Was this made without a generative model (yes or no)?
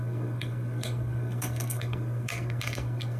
no